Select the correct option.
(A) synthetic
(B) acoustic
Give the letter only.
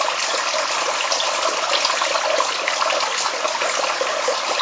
B